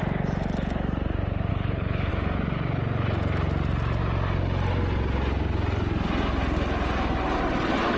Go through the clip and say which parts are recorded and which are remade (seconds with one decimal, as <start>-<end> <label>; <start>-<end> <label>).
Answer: 0.0-1.5 recorded; 1.5-2.1 remade; 2.1-8.0 recorded